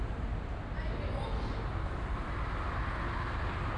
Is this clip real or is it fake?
real